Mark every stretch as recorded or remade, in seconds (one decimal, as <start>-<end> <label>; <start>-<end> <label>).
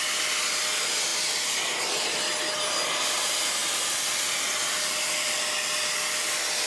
0.0-6.7 recorded